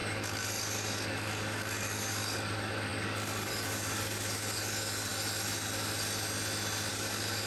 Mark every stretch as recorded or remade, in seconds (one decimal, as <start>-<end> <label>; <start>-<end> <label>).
0.0-5.1 remade; 5.1-6.9 recorded; 6.9-7.5 remade